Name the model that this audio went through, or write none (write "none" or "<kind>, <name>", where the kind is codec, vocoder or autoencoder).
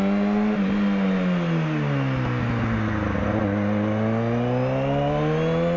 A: none